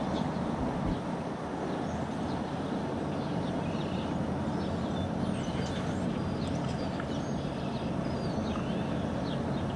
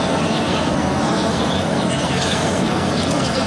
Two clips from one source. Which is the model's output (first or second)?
second